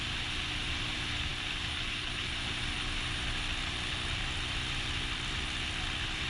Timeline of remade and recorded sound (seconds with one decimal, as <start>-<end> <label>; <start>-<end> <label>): 0.0-6.3 recorded